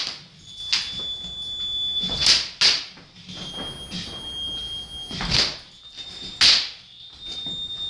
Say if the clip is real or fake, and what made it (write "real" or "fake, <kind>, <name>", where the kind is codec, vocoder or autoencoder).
real